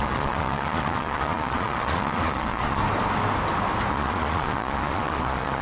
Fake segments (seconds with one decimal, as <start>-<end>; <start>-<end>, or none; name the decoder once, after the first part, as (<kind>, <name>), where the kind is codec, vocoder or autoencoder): 0.0-2.8 (vocoder, Vocos); 3.9-5.6